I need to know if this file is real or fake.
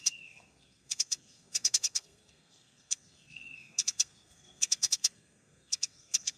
fake